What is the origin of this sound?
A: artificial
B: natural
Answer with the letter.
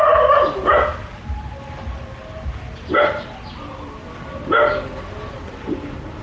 B